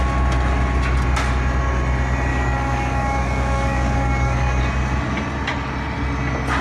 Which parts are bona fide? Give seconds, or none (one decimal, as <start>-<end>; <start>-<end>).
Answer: 0.0-2.3; 4.6-6.6

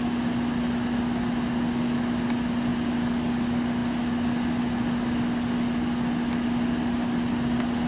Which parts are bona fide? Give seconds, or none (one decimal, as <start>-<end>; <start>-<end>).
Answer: 0.0-7.9

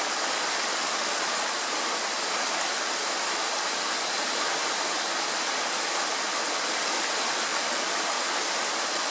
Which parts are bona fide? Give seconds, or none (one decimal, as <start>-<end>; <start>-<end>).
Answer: 0.0-9.1

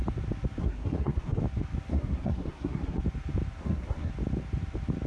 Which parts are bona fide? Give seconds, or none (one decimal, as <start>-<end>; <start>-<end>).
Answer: 0.0-0.6; 1.4-1.9; 3.0-3.6; 4.1-5.1

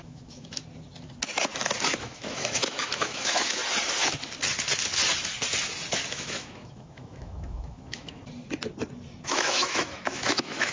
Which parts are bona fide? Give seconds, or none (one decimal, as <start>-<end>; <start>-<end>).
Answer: 0.6-1.9; 3.6-6.1; 8.2-9.3

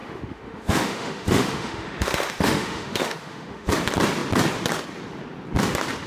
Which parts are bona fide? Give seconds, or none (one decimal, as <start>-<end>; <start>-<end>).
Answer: 3.7-6.1

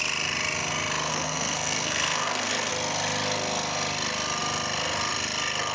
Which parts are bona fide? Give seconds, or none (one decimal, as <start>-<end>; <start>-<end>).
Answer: 0.0-1.1; 2.7-5.7